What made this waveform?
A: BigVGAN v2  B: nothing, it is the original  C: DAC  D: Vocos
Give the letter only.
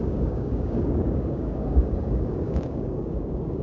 C